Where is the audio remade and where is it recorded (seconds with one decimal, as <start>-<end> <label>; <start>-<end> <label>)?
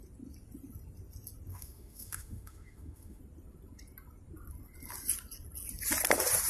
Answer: 0.0-1.5 recorded; 1.5-3.2 remade; 3.2-6.5 recorded